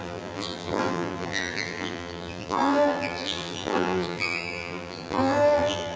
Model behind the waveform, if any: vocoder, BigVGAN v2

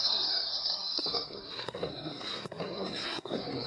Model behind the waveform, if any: codec, SNAC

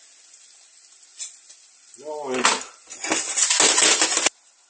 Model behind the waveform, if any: none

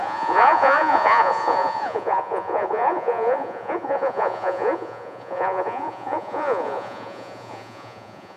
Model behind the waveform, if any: vocoder, Vocos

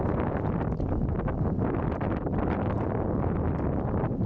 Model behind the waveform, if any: none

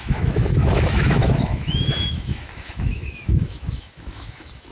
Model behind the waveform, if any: autoencoder, DAC-VAE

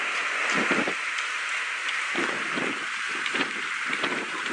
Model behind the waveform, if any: none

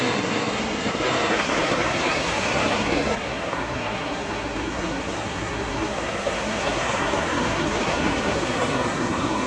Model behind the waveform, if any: codec, SNAC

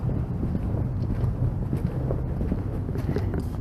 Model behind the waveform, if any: none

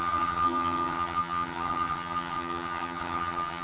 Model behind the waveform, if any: vocoder, HiFi-GAN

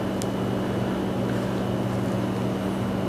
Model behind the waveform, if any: none